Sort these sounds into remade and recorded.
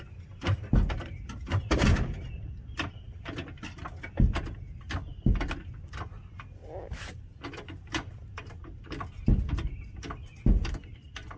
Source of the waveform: recorded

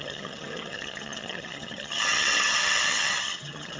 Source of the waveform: remade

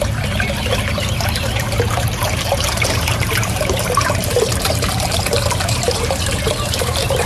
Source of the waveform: remade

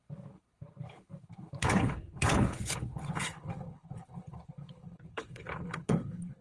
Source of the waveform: remade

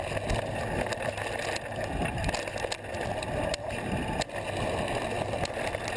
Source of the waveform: recorded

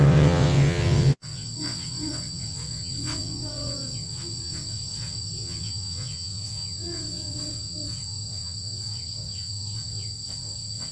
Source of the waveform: remade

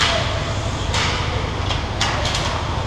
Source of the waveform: recorded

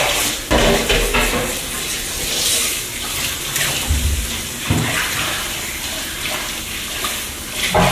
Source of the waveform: recorded